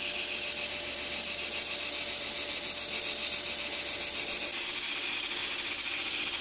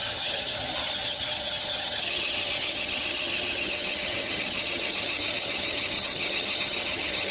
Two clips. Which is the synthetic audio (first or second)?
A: second